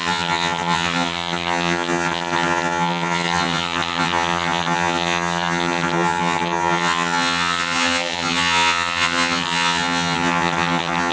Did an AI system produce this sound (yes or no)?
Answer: yes